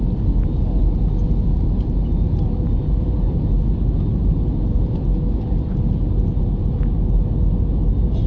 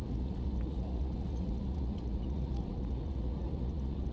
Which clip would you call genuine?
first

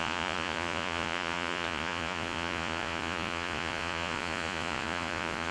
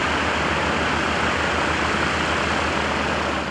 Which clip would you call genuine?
second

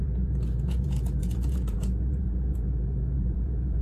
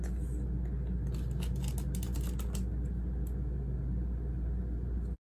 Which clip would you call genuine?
second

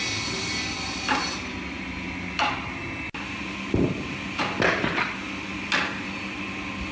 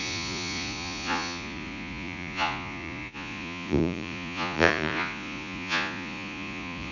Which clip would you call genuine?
first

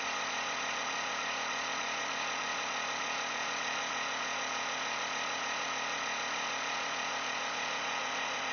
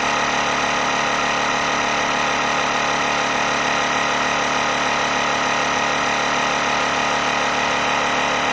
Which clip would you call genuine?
second